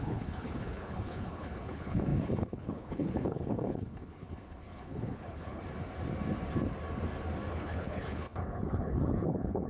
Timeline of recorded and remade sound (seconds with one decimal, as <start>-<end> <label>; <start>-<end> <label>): 0.0-5.6 remade; 5.6-7.5 recorded; 7.5-9.7 remade